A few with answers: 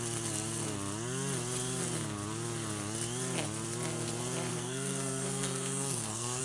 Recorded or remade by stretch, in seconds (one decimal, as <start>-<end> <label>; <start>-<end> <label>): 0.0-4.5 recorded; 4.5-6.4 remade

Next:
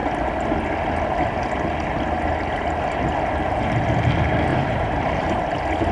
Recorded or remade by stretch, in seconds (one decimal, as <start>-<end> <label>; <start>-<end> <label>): 0.0-4.5 recorded; 4.5-5.4 remade; 5.4-5.9 recorded

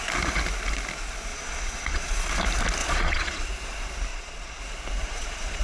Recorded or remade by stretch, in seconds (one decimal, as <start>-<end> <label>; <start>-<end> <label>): 0.0-1.3 recorded; 1.3-2.3 remade; 2.3-2.8 recorded; 2.8-3.5 remade; 3.5-4.1 recorded; 4.1-4.6 remade; 4.6-5.0 recorded; 5.0-5.6 remade